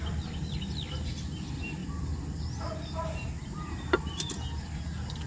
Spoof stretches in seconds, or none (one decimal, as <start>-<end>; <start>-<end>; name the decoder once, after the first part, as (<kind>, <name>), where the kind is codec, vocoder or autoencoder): none